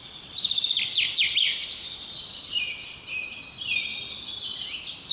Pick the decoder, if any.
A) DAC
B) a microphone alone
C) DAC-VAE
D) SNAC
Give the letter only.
B